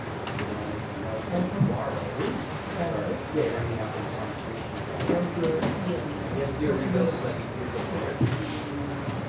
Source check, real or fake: real